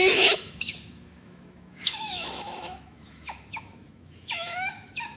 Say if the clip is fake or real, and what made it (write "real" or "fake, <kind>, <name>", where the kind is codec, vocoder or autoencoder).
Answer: fake, autoencoder, DAC-VAE